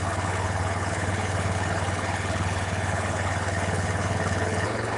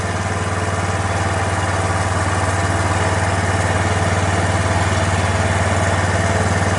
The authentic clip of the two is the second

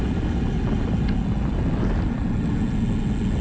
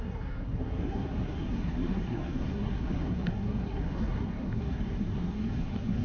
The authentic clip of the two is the first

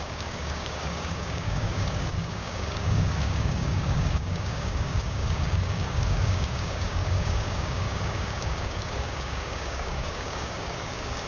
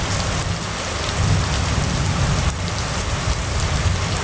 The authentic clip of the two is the second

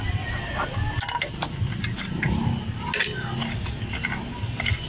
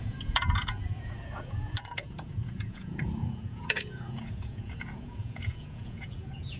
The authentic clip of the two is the first